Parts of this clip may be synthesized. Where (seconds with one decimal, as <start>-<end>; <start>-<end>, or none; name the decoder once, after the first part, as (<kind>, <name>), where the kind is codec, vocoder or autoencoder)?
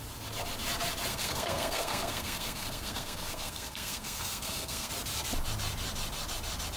1.1-4.9 (codec, SNAC)